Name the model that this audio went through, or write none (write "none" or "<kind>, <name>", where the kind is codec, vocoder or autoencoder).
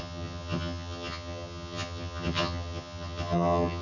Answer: vocoder, HiFi-GAN